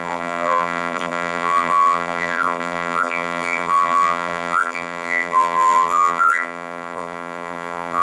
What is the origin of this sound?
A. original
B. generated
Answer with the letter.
B